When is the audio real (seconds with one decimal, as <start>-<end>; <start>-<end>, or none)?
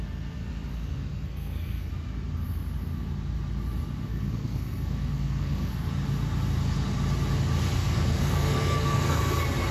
0.0-0.7; 1.9-4.1; 5.9-7.8; 9.2-9.7